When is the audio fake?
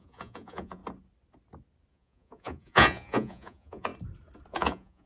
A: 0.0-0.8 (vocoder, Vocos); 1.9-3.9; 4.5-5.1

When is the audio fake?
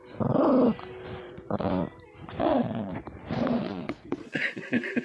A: 1.2-1.7 (vocoder, Vocos); 2.4-2.9; 3.6-5.0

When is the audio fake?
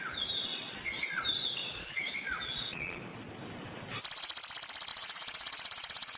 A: 0.5-1.2 (vocoder, Vocos); 1.6-3.0; 4.9-6.2